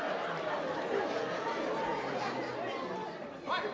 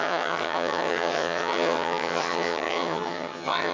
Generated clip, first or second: second